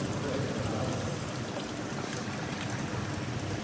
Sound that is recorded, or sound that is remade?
recorded